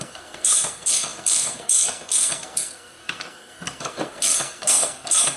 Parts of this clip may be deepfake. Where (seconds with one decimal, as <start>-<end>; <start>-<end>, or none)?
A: 0.0-5.4

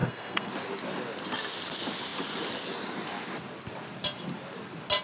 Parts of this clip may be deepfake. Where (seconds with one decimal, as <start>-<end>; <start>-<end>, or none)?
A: 0.0-0.5

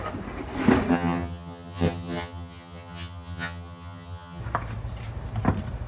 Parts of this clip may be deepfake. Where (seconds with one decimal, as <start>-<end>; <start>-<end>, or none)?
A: 0.9-4.4